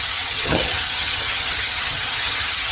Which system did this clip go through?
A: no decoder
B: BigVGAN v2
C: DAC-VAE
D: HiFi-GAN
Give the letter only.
D